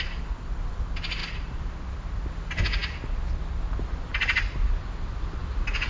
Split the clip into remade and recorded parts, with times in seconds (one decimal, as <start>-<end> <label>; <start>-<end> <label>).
0.0-1.2 recorded; 1.2-2.1 remade; 2.1-4.1 recorded; 4.1-5.4 remade; 5.4-5.9 recorded